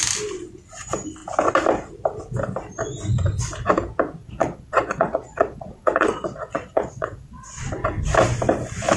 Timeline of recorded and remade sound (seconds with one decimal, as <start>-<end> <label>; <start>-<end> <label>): 0.0-4.2 recorded; 4.2-7.6 remade; 7.6-9.0 recorded